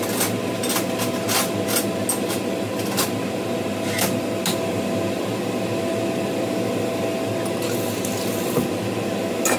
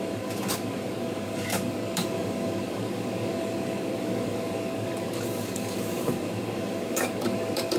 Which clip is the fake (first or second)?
second